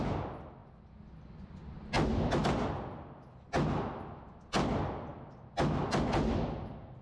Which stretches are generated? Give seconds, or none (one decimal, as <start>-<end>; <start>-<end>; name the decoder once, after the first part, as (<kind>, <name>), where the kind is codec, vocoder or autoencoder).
none